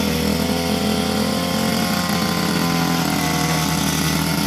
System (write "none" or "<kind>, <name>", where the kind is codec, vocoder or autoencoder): none